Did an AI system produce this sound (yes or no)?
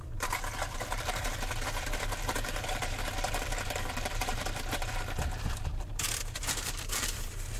yes